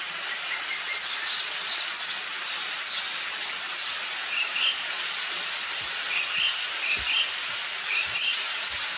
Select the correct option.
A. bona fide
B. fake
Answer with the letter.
A